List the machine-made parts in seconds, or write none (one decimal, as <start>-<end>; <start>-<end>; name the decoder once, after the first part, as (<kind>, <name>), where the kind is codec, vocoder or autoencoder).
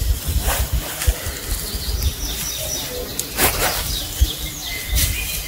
3.1-5.5 (vocoder, BigVGAN v2)